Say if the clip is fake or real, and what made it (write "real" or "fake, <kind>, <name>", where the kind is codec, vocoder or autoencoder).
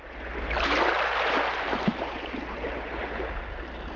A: real